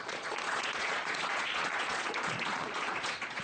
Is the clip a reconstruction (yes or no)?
yes